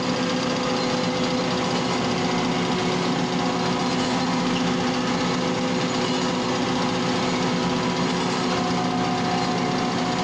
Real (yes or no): yes